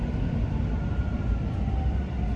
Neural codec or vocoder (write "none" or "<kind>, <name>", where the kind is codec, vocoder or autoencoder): none